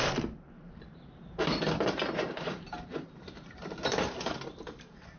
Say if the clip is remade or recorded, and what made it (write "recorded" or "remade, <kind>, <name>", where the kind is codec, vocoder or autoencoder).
remade, vocoder, BigVGAN v2